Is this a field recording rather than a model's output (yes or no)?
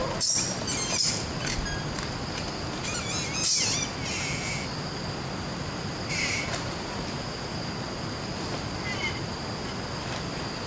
yes